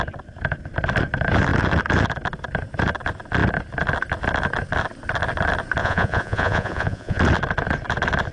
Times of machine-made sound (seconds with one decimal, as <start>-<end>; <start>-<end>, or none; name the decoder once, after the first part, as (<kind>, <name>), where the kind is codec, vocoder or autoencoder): 5.8-7.2 (vocoder, Vocos)